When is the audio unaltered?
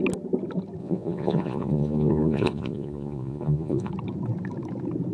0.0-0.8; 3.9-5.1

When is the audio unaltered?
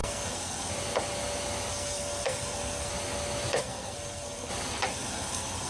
0.7-1.7; 2.9-3.6; 4.5-4.9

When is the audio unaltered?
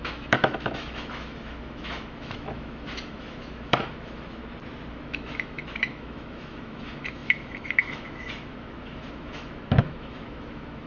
4.4-4.9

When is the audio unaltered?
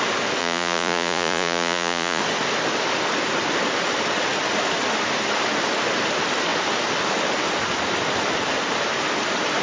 0.0-0.4; 2.2-9.6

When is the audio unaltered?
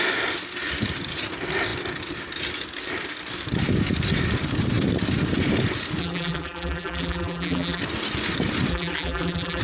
0.0-6.0; 7.8-8.7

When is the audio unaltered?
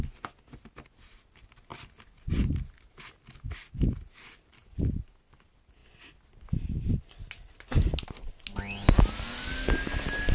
0.0-10.3